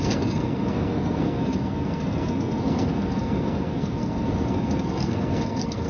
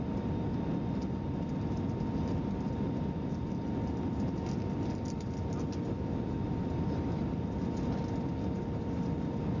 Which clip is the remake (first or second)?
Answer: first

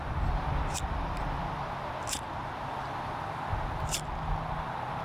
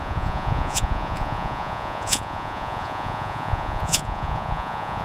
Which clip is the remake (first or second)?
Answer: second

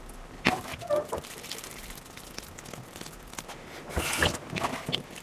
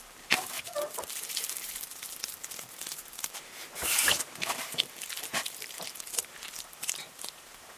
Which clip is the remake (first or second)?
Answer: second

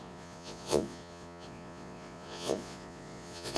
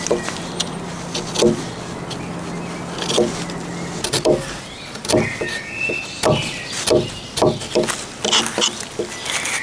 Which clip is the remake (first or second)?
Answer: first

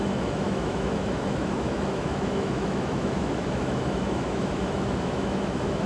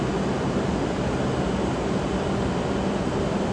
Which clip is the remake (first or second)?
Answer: first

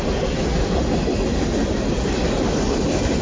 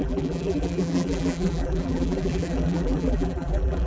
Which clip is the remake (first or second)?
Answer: second